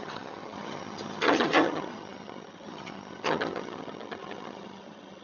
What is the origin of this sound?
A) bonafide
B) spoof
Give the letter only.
B